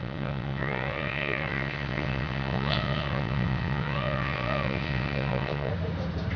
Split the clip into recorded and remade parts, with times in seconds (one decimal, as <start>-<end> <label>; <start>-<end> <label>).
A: 0.0-5.7 remade; 5.7-6.4 recorded